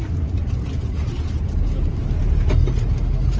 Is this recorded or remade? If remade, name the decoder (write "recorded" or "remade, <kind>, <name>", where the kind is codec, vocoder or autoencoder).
remade, vocoder, BigVGAN v2